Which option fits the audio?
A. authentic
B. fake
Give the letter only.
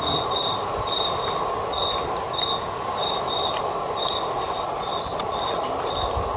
A